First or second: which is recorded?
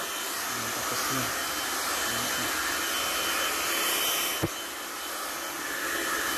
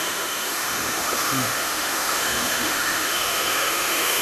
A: first